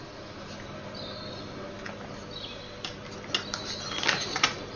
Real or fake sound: real